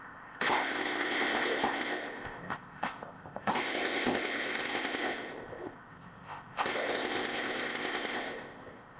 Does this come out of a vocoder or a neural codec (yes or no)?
yes